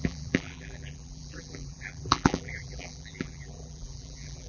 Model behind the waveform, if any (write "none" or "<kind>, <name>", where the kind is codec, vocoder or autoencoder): vocoder, BigVGAN v2